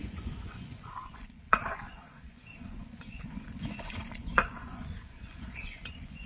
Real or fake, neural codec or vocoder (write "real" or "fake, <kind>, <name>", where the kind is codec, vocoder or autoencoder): fake, vocoder, Vocos